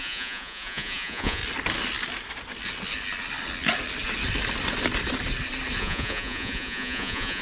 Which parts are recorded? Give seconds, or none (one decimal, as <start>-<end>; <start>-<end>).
1.4-5.8